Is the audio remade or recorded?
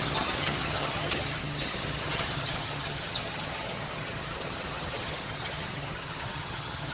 remade